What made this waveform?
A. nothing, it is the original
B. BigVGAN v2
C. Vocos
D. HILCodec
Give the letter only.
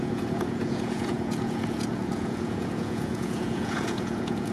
C